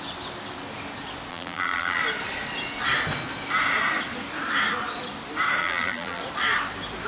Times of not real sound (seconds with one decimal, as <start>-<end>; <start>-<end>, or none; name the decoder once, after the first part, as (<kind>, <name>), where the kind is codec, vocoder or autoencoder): 1.3-2.0 (vocoder, BigVGAN v2); 5.6-6.2